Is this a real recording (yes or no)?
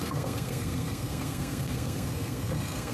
no